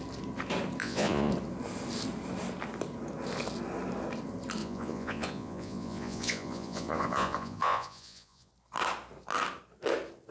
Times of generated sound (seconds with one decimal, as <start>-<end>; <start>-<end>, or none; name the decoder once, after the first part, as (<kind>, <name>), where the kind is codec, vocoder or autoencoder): 0.8-1.3 (vocoder, Vocos); 4.6-8.5